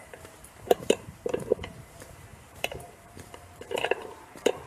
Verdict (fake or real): fake